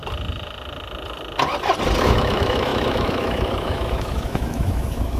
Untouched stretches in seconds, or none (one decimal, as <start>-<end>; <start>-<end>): 0.0-2.0